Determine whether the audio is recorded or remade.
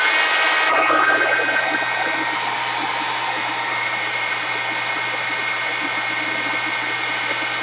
recorded